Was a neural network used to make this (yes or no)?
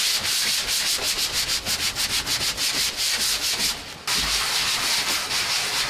no